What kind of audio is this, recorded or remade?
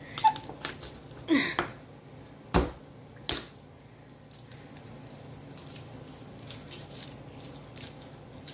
recorded